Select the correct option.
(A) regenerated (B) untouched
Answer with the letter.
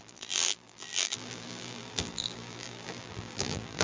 A